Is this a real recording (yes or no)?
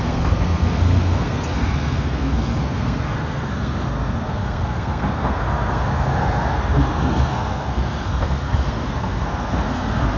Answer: no